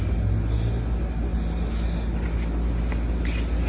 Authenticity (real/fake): real